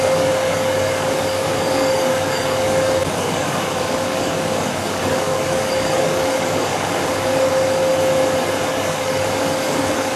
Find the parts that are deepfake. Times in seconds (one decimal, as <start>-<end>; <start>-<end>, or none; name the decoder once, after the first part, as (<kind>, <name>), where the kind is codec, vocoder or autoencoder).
0.0-7.9 (codec, DAC); 8.7-10.2

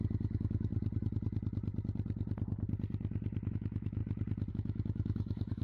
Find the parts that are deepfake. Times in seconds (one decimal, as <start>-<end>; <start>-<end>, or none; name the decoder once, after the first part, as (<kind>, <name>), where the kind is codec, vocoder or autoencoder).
0.0-0.7 (autoencoder, DAC-VAE); 3.5-4.0; 4.5-5.6

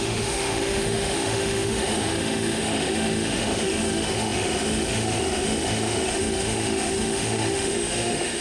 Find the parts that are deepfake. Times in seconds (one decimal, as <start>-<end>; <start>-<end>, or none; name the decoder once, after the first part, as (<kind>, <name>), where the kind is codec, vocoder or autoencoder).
0.0-8.4 (autoencoder, DAC-VAE)

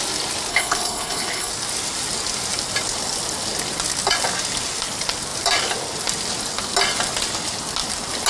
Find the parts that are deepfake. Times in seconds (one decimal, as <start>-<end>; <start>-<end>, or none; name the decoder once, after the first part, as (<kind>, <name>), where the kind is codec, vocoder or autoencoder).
0.5-1.5 (codec, HILCodec)

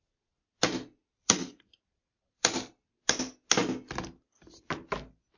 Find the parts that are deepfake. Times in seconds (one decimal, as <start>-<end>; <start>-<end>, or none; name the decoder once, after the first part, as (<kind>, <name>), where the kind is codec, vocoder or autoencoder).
1.0-2.7 (vocoder, BigVGAN v2)